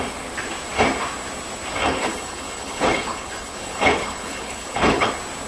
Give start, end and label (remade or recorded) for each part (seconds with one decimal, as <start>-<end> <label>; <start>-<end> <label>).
0.0-1.8 recorded; 1.8-5.1 remade; 5.1-5.5 recorded